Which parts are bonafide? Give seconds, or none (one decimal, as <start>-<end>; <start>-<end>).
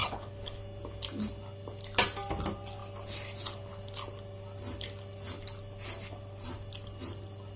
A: 0.6-7.6